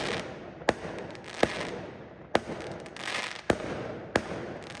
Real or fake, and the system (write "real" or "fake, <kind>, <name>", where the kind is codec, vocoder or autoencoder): real